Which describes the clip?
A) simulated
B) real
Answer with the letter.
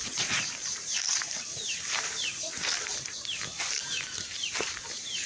A